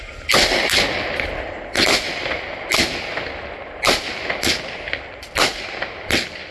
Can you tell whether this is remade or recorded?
recorded